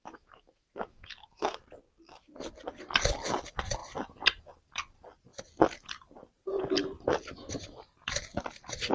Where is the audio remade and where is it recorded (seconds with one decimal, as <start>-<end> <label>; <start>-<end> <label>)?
0.0-1.6 remade; 1.6-8.9 recorded